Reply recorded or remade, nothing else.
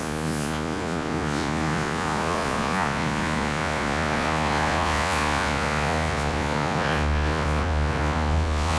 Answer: remade